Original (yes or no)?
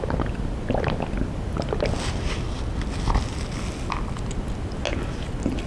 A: yes